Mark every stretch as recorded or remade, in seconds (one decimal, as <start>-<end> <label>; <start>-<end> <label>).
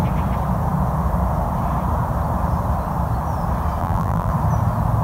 0.0-3.8 recorded; 3.8-4.3 remade; 4.3-5.0 recorded